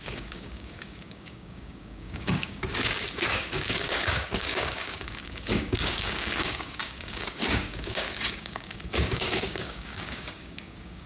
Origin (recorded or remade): remade